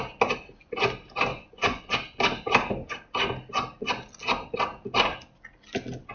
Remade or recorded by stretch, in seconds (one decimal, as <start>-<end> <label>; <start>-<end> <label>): 0.0-1.3 recorded; 1.3-1.9 remade; 1.9-6.1 recorded